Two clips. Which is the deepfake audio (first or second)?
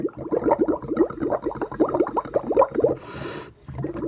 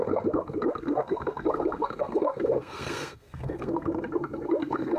second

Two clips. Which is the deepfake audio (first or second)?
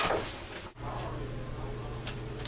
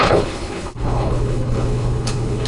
second